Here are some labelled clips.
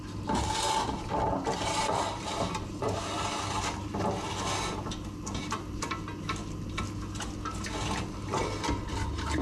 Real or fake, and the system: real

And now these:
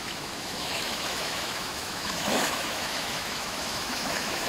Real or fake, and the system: fake, autoencoder, DAC-VAE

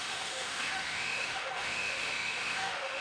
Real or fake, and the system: fake, autoencoder, DAC-VAE